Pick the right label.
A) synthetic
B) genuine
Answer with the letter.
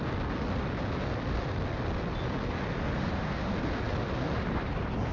B